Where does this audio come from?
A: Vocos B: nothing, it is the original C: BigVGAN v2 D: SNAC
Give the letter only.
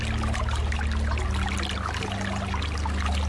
B